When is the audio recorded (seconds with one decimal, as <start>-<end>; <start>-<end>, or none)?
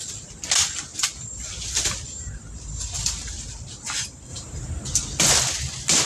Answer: 0.0-0.9; 3.8-6.1